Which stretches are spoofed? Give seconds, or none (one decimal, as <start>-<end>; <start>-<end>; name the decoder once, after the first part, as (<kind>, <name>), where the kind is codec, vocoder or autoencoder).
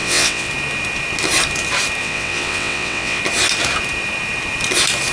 0.0-0.5 (vocoder, WaveNeXt); 2.0-3.2